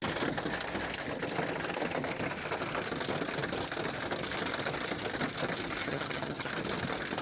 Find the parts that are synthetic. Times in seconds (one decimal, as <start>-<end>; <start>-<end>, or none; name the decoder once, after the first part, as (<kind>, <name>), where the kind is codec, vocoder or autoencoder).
5.8-6.5 (vocoder, HiFi-GAN)